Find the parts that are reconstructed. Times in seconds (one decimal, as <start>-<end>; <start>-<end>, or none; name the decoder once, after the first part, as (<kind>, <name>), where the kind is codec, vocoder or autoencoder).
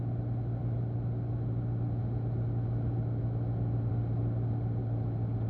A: none